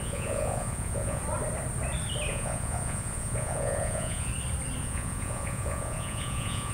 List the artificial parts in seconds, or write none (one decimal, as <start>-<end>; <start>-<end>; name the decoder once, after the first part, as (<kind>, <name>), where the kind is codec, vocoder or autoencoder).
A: 0.0-1.2 (vocoder, Vocos); 2.3-4.3; 4.8-6.7